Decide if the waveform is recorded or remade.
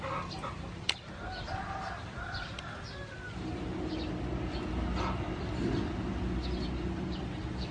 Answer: recorded